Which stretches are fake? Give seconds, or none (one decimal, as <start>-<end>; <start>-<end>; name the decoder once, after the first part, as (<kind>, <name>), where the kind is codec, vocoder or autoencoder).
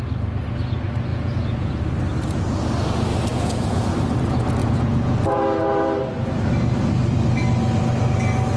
1.1-1.7 (vocoder, Vocos); 3.3-3.9; 4.6-5.4